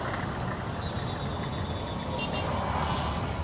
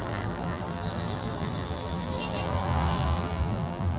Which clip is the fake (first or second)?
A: second